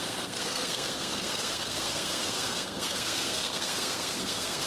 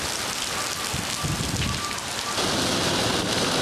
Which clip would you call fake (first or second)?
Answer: first